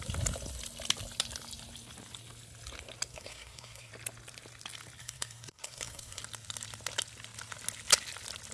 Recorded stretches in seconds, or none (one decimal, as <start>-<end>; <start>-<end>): 0.0-3.1; 3.9-5.0; 6.2-8.5